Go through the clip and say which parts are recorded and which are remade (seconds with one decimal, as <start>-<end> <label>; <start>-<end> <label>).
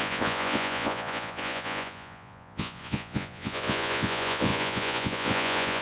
0.0-5.8 remade